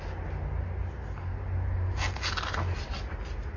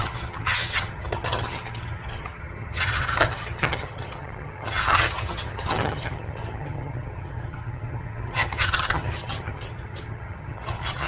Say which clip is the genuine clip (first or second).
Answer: first